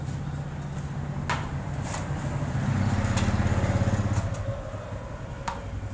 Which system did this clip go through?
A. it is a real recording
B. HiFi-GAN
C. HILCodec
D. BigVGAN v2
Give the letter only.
A